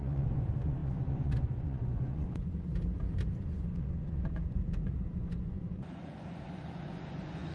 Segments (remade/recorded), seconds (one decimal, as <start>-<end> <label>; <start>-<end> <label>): 0.0-2.7 remade; 2.7-3.4 recorded; 3.4-7.5 remade

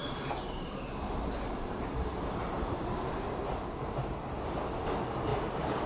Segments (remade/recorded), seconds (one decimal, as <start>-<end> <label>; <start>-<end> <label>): 0.0-3.5 remade; 3.5-5.3 recorded; 5.3-5.9 remade

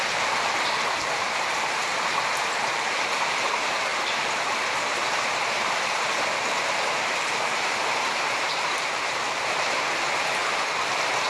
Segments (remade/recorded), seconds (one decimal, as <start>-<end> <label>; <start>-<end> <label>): 0.0-1.9 remade; 1.9-2.6 recorded; 2.6-11.3 remade

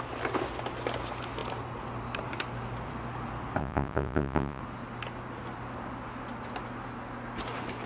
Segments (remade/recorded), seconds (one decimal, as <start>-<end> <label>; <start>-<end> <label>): 0.0-3.6 recorded; 3.6-4.6 remade; 4.6-7.9 recorded

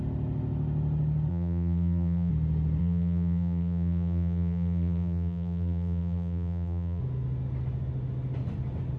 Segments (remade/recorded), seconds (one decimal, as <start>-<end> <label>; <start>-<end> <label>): 0.0-1.3 recorded; 1.3-2.3 remade; 2.3-2.8 recorded; 2.8-7.0 remade; 7.0-9.0 recorded